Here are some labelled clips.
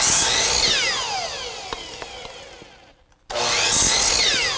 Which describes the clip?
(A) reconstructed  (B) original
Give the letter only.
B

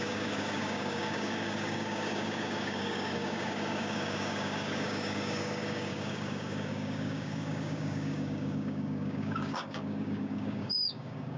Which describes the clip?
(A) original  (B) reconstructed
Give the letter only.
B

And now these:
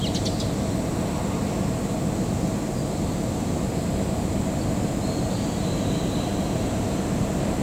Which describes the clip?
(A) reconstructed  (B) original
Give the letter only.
B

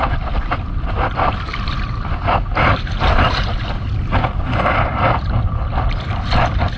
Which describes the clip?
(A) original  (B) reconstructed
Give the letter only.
A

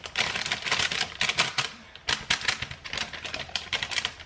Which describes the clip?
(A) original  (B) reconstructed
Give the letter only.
A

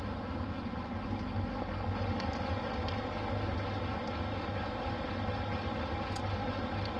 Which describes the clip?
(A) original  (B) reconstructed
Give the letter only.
A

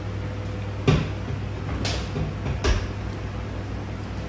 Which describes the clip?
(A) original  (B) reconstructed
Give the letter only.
A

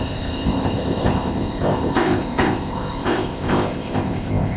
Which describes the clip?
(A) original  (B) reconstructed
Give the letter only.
B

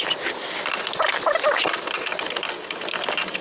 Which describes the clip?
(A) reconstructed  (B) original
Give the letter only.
B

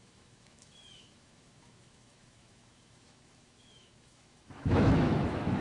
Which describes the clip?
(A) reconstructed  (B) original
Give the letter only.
A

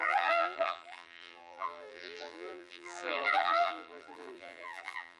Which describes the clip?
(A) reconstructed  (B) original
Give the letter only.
A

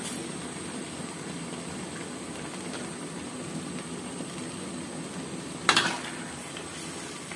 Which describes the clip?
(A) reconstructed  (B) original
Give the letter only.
B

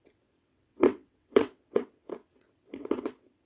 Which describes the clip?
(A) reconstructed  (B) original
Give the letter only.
A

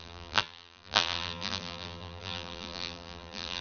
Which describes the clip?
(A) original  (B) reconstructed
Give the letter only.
B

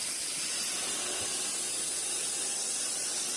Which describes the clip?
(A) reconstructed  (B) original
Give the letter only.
B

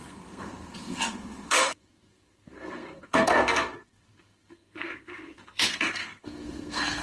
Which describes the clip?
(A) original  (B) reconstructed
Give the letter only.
B